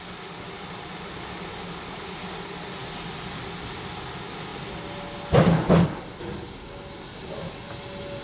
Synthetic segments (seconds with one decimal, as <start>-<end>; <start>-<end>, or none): none